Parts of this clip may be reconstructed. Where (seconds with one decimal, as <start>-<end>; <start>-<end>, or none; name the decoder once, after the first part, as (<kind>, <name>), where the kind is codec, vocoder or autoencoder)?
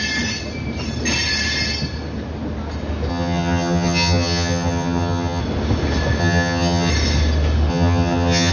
3.1-5.4 (vocoder, HiFi-GAN); 6.2-6.9; 7.7-8.5